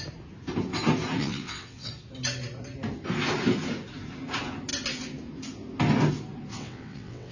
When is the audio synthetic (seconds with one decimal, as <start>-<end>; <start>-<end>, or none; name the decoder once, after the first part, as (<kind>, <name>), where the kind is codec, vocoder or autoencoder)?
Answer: 1.2-1.9 (vocoder, WaveNeXt); 6.5-7.3